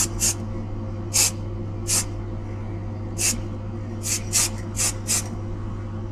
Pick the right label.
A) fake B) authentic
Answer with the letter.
B